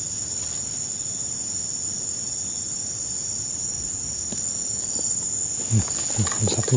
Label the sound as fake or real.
real